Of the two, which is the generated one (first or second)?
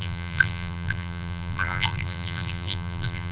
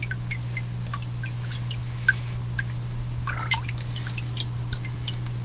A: first